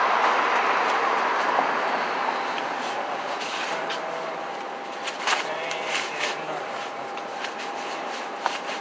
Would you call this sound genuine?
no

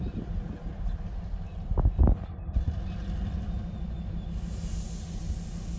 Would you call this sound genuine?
yes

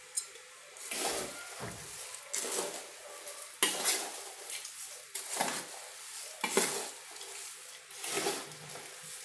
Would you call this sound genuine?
yes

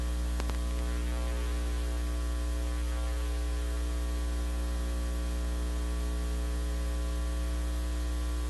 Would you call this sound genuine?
yes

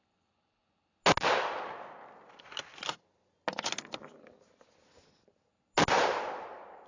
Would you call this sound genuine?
yes